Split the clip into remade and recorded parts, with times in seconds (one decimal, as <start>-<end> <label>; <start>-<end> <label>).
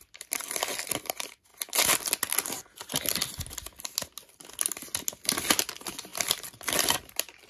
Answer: 0.0-6.1 recorded; 6.1-7.5 remade